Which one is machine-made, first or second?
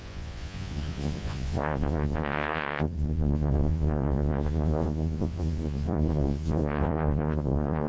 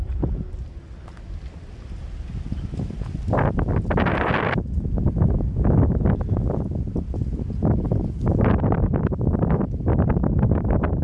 first